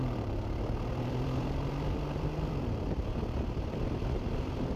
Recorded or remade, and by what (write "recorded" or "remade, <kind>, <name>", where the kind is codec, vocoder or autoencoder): remade, vocoder, BigVGAN v2